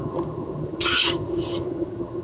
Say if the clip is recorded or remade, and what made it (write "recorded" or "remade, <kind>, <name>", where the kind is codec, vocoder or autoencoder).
remade, vocoder, HiFi-GAN